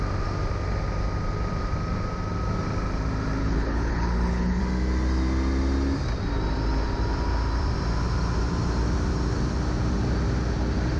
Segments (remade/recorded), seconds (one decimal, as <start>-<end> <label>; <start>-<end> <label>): 0.0-3.4 recorded; 3.4-4.6 remade; 4.6-11.0 recorded